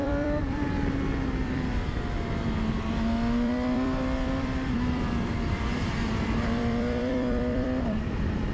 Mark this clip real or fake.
fake